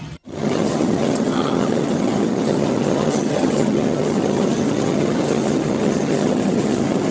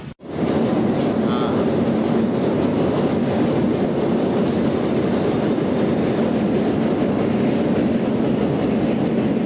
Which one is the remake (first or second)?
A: first